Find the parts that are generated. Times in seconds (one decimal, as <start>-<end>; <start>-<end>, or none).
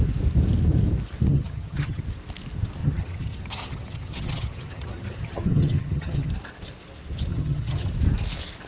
1.3-2.0; 2.8-6.3; 7.3-7.9